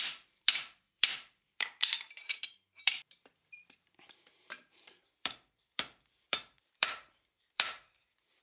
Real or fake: fake